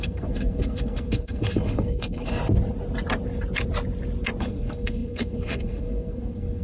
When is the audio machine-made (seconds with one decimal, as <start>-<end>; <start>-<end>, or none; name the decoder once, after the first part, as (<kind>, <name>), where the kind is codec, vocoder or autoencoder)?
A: 0.0-2.4 (codec, SNAC); 4.4-6.6